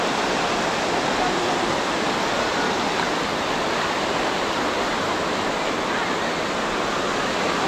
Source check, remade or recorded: recorded